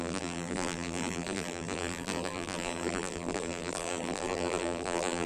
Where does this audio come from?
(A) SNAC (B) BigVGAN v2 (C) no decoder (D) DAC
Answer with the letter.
B